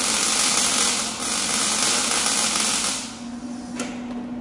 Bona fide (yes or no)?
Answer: yes